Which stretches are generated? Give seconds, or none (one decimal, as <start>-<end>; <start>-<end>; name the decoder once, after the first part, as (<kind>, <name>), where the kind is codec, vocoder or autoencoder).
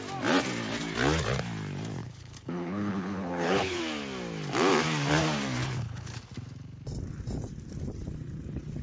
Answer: 2.0-3.8 (codec, HILCodec); 5.6-6.2